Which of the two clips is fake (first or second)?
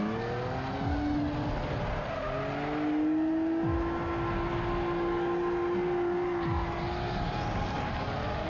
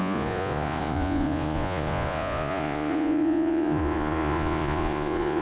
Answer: second